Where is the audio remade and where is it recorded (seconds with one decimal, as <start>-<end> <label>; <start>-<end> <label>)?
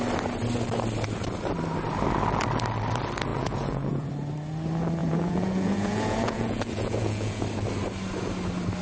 0.0-3.3 recorded; 3.3-4.1 remade; 4.1-5.0 recorded; 5.0-7.4 remade; 7.4-8.8 recorded